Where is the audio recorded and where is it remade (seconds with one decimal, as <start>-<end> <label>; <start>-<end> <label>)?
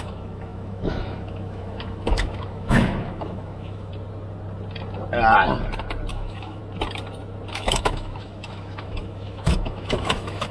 0.0-3.9 remade; 3.9-6.1 recorded; 6.1-6.6 remade; 6.6-7.5 recorded; 7.5-10.5 remade